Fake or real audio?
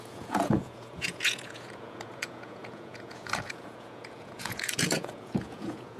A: fake